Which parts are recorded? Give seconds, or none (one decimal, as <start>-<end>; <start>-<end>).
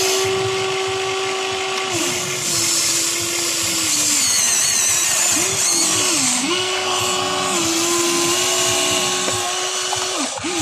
0.0-6.4; 7.0-10.6